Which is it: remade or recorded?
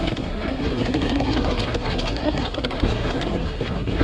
remade